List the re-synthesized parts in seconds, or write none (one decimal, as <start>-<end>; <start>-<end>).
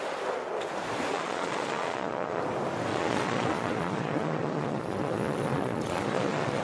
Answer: 1.1-2.4; 2.9-6.6